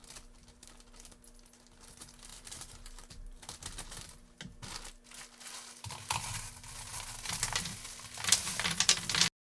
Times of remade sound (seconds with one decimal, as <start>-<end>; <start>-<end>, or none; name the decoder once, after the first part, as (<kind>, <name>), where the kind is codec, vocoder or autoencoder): 2.3-3.4 (vocoder, BigVGAN v2)